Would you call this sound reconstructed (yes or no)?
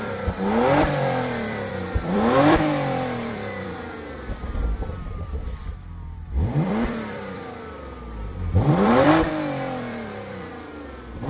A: yes